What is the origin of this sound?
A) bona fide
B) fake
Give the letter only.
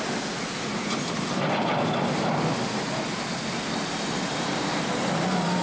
A